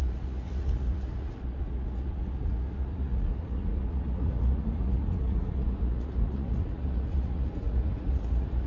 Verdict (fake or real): fake